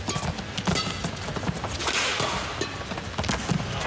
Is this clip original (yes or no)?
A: yes